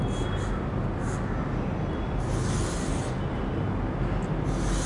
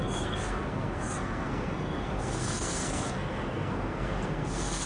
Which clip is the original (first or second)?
first